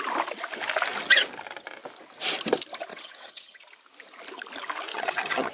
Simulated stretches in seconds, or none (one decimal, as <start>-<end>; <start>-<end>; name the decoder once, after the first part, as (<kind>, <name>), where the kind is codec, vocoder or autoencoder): 2.9-3.6 (vocoder, HiFi-GAN); 4.9-5.5